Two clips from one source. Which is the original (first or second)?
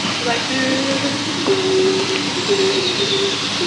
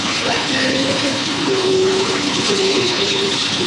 first